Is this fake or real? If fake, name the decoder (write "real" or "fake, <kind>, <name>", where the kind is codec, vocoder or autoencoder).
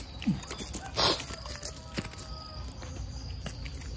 real